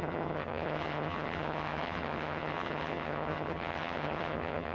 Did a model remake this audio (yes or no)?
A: yes